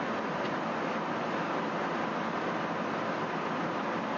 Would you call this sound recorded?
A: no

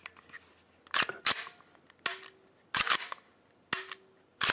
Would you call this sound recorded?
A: yes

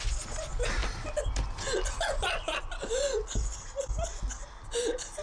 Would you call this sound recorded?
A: yes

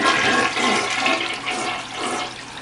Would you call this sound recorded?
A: yes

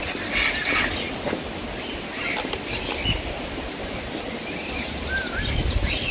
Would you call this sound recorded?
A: yes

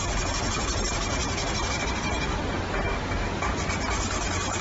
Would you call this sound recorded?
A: yes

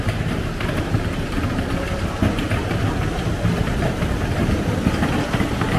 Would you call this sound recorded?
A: yes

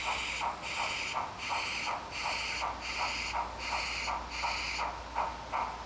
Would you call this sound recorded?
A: yes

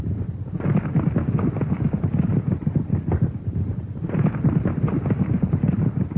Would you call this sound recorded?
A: no